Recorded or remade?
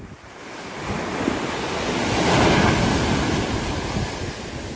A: recorded